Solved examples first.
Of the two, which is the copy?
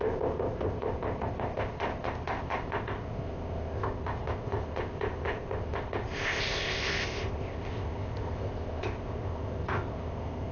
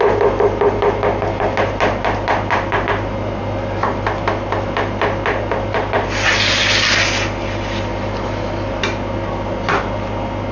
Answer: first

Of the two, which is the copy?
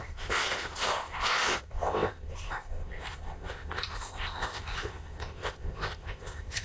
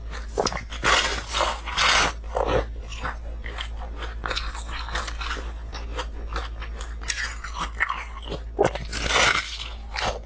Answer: first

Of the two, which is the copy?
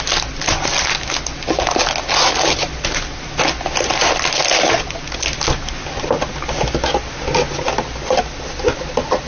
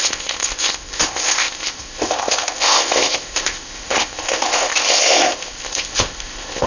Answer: second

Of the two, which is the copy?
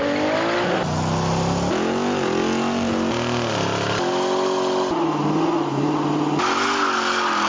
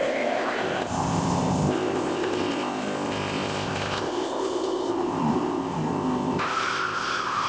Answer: second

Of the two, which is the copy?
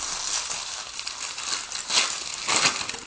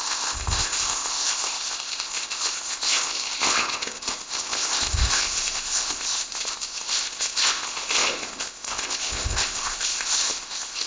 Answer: second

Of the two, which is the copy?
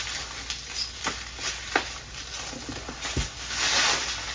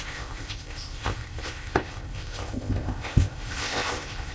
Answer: second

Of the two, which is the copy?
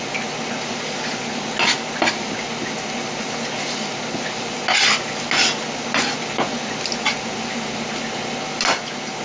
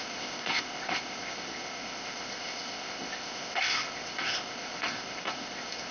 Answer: second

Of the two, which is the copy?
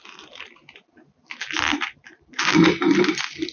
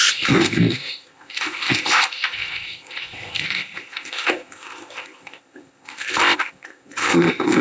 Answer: second